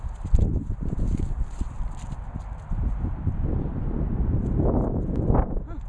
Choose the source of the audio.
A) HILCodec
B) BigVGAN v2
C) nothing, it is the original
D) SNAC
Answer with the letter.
C